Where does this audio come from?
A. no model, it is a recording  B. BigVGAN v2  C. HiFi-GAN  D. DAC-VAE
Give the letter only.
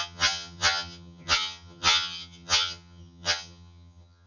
C